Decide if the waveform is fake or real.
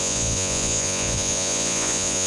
fake